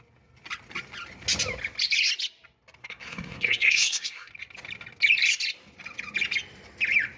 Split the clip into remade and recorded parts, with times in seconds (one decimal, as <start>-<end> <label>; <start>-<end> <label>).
0.0-2.8 recorded; 2.8-4.3 remade; 4.3-7.2 recorded